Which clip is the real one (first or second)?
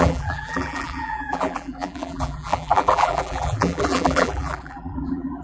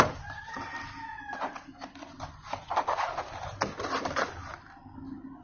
second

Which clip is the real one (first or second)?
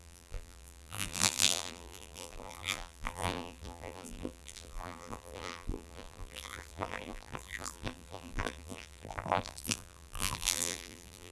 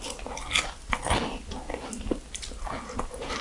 second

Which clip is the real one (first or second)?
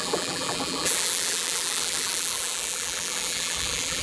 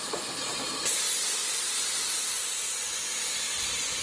second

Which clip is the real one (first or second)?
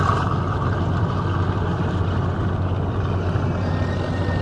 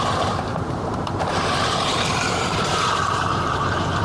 first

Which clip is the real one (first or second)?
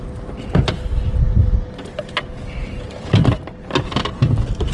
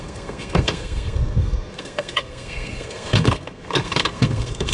first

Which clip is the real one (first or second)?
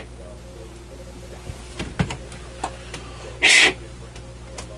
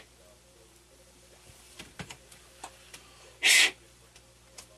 first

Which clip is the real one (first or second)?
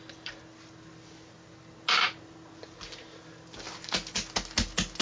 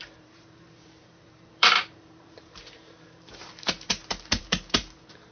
first